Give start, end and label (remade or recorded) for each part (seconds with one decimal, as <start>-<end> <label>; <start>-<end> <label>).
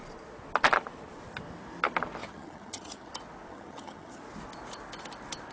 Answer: 0.0-2.2 recorded; 2.2-3.1 remade; 3.1-3.5 recorded; 3.5-4.2 remade; 4.2-5.5 recorded